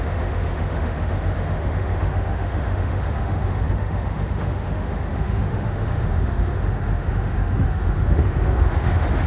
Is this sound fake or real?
fake